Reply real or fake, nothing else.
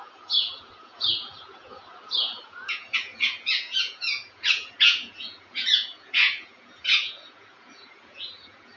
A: fake